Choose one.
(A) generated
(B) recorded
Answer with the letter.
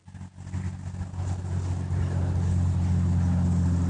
B